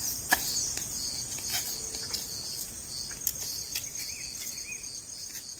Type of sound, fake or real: real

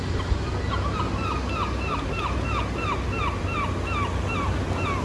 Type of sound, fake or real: real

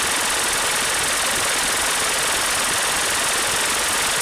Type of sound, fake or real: real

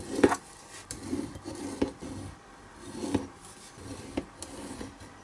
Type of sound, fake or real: real